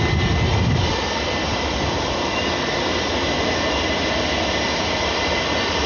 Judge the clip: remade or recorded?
recorded